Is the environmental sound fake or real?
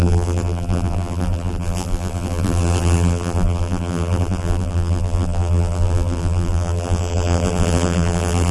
fake